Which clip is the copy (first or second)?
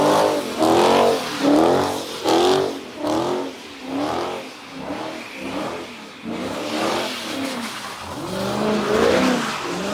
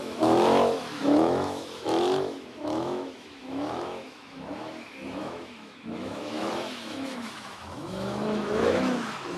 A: second